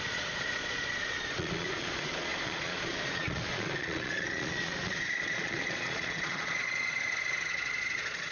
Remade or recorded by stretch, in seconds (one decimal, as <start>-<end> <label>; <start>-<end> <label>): 0.0-8.3 remade